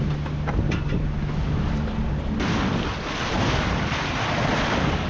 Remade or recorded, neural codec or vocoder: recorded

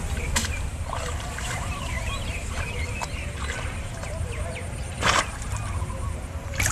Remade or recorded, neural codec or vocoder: remade, vocoder, BigVGAN v2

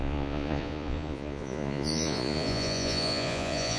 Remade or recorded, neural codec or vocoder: remade, vocoder, Vocos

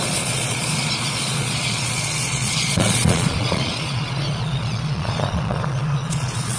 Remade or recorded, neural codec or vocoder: remade, vocoder, Vocos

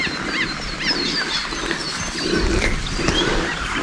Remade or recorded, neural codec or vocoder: recorded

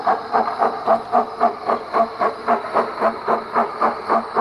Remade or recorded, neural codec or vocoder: recorded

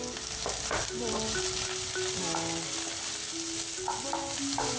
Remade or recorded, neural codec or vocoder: recorded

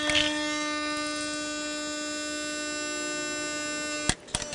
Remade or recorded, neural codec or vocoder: recorded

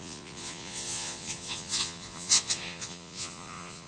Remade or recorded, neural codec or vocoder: remade, vocoder, Vocos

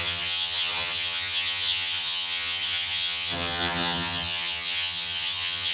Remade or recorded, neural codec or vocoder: remade, vocoder, HiFi-GAN